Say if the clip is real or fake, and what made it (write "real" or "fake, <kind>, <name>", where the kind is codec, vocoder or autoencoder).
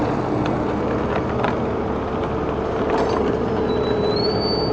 real